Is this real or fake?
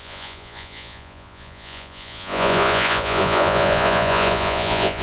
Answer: fake